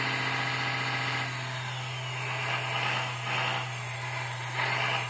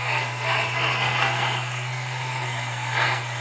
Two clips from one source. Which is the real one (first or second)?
first